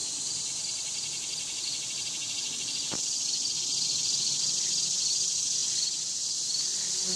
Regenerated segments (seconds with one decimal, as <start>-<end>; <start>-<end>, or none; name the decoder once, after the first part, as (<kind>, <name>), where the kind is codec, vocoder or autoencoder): 0.0-3.6 (vocoder, BigVGAN v2)